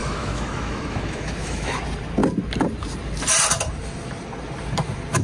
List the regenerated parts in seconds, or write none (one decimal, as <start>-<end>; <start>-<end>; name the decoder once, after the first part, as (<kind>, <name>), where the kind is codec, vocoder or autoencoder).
0.0-1.7 (autoencoder, DAC-VAE)